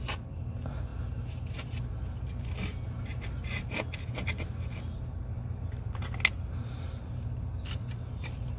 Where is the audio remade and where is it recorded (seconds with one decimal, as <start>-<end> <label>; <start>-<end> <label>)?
0.0-8.6 recorded

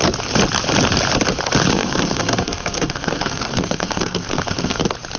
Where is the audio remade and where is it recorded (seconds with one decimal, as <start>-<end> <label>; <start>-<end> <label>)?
0.0-1.7 recorded; 1.7-4.8 remade; 4.8-5.2 recorded

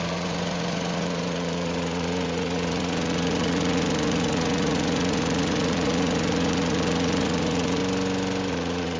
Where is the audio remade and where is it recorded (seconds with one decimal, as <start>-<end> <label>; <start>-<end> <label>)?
0.0-7.8 remade; 7.8-8.5 recorded; 8.5-9.0 remade